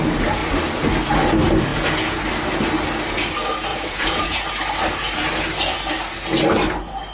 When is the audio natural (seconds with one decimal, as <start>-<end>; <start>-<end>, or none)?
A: 0.0-1.7; 2.2-3.7; 4.4-7.1